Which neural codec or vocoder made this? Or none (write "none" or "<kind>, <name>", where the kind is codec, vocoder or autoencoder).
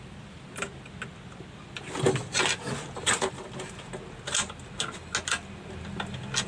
none